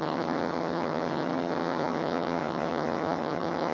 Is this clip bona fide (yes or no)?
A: no